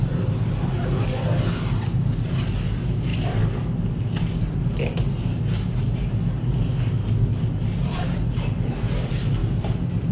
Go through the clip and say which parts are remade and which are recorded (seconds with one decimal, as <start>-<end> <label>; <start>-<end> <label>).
0.0-10.1 recorded